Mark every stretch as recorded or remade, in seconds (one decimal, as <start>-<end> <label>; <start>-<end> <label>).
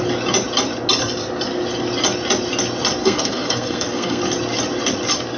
0.0-3.0 recorded; 3.0-4.2 remade; 4.2-5.4 recorded